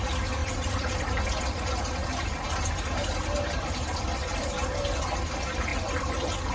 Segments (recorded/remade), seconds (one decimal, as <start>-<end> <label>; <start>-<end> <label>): 0.0-6.5 recorded